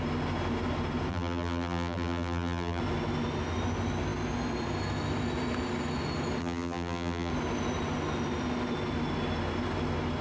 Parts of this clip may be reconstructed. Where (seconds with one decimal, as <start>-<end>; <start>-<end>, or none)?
1.1-2.8; 6.4-7.3